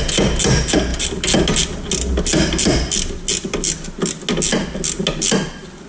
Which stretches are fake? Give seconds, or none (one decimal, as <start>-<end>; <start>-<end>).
none